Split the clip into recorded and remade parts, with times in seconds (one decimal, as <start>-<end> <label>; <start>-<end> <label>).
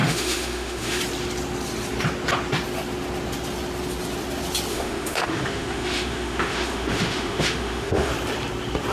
0.0-1.0 remade; 1.0-4.7 recorded; 4.7-8.1 remade; 8.1-8.9 recorded